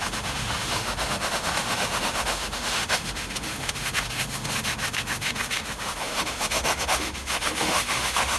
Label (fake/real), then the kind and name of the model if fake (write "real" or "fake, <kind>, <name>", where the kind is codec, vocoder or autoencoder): fake, autoencoder, DAC-VAE